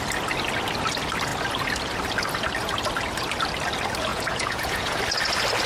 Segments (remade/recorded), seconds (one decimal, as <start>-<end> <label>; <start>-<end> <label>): 0.0-4.1 recorded; 4.1-5.0 remade; 5.0-5.7 recorded